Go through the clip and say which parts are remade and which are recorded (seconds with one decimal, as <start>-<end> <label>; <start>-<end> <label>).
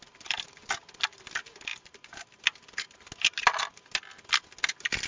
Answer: 0.0-5.1 recorded